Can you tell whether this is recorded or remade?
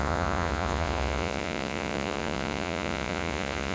remade